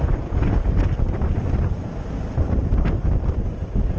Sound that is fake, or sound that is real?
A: real